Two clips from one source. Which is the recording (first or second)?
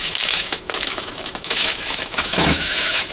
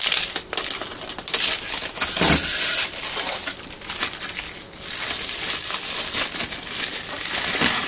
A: second